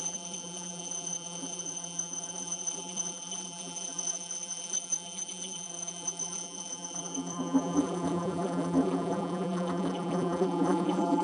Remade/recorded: remade